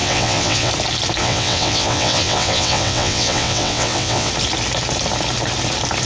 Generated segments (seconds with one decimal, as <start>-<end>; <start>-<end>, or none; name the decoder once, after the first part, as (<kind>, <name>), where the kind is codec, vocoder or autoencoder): 0.0-0.7 (vocoder, WaveNeXt); 1.2-4.3